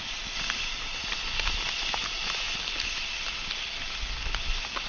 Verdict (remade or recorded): recorded